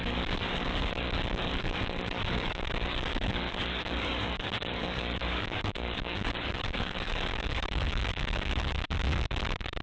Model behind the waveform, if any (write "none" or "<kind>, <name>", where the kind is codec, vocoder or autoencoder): codec, DAC